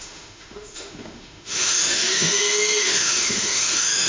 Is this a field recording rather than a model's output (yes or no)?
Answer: no